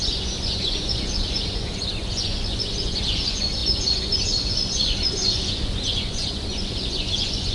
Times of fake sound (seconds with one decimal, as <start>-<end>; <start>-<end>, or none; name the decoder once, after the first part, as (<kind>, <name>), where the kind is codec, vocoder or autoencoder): 0.0-7.5 (vocoder, Vocos)